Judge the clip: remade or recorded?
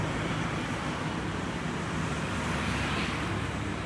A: recorded